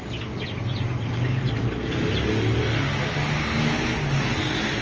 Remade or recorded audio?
recorded